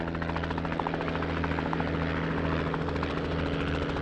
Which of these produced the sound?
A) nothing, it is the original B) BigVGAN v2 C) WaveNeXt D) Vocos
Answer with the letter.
A